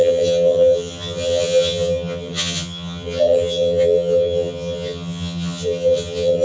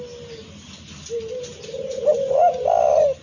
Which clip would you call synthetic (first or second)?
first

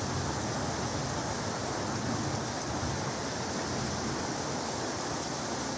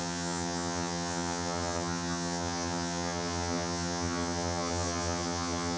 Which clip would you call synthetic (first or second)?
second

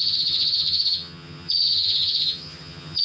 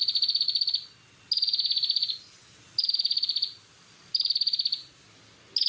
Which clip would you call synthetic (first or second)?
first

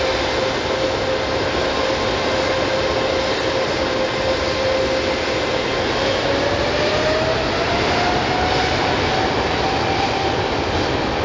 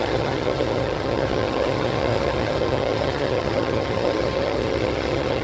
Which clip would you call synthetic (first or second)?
second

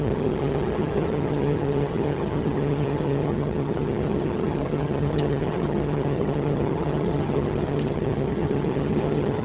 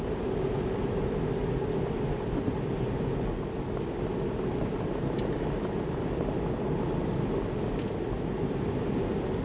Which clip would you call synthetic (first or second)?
first